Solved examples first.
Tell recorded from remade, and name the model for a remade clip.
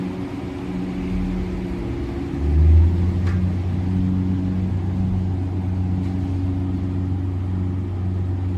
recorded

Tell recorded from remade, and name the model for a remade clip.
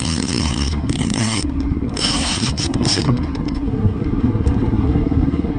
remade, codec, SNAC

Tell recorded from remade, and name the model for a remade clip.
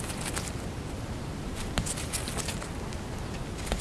recorded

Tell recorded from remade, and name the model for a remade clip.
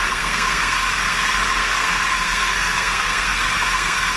remade, codec, SNAC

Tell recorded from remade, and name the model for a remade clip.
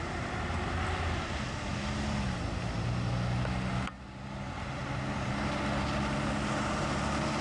recorded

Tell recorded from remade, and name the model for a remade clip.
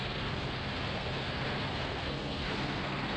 remade, codec, SNAC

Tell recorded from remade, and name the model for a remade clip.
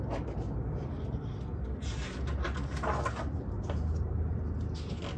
recorded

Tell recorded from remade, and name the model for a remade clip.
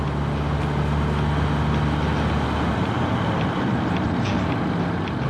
recorded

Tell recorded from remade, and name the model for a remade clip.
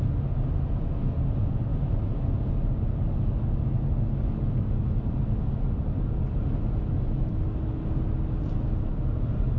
recorded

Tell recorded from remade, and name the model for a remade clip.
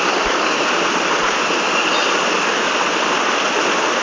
recorded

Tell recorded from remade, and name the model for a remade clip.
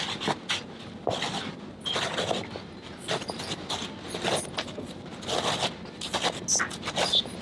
recorded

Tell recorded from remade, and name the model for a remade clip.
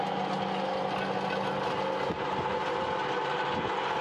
recorded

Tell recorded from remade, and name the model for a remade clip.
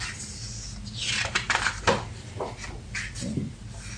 recorded